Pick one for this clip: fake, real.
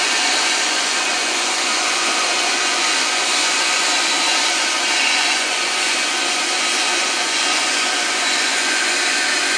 fake